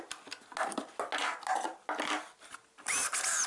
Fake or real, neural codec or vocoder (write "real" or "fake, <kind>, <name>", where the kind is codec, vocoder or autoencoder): real